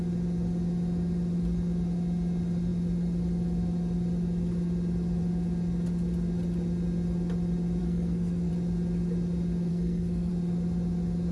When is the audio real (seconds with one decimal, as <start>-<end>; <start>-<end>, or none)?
0.0-7.8; 8.5-9.7; 10.3-11.3

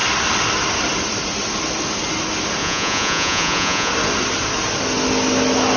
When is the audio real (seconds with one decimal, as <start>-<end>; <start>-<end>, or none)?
0.0-2.6; 3.9-5.8

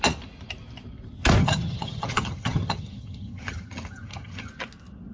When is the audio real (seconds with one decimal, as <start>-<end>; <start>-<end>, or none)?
0.0-1.4; 4.5-5.1

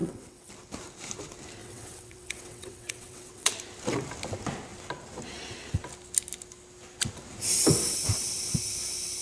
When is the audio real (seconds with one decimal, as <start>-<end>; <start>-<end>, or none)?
0.5-1.6; 3.5-9.2

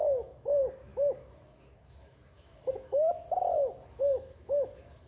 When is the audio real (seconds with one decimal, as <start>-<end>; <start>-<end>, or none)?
none

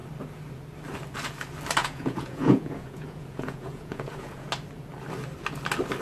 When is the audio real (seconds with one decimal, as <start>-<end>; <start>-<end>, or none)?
0.0-1.8; 4.5-6.0

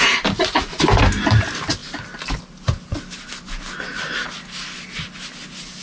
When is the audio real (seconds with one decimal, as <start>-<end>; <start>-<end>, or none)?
0.0-5.8

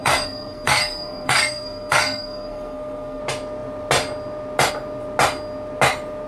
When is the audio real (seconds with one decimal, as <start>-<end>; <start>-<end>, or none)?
3.2-6.3